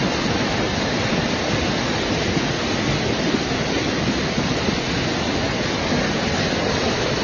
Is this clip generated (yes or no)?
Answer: no